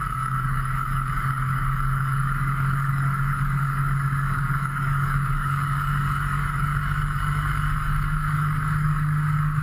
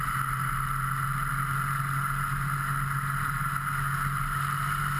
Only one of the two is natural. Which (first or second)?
second